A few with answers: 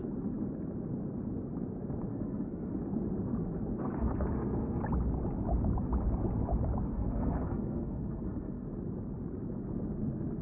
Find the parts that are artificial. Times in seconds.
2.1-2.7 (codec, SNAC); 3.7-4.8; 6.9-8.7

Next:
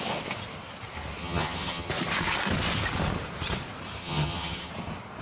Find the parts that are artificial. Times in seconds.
1.2-1.9 (vocoder, HiFi-GAN); 4.0-4.7

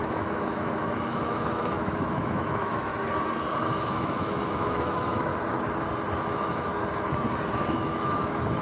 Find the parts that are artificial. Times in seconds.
0.0-2.9 (autoencoder, DAC-VAE); 3.6-5.3; 6.1-6.7; 7.7-8.6

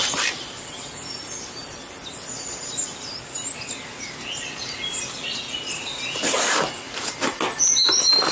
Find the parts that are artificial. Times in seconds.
none

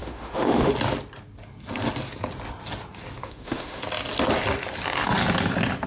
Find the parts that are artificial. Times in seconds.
0.0-0.7 (autoencoder, DAC-VAE); 3.2-3.8